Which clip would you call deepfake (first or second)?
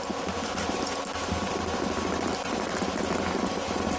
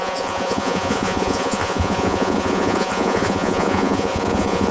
second